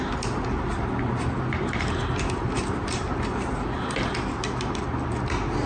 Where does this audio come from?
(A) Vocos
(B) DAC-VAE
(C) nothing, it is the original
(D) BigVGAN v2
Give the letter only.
C